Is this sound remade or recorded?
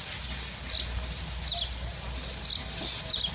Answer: recorded